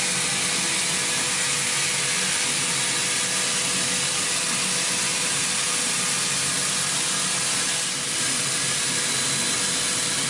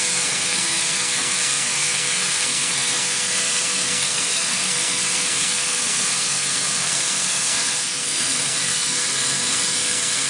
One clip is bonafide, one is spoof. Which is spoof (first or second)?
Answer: second